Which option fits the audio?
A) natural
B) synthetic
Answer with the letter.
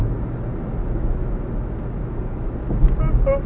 A